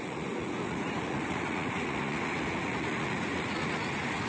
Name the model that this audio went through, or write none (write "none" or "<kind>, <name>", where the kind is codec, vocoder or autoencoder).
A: vocoder, Vocos